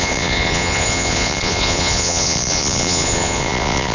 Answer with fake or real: fake